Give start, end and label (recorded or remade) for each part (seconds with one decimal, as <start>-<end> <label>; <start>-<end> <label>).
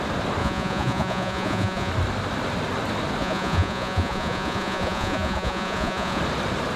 0.0-0.4 recorded; 0.4-1.9 remade; 1.9-3.2 recorded; 3.2-6.2 remade; 6.2-6.8 recorded